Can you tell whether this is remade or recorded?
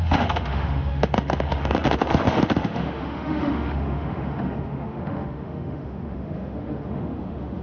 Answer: remade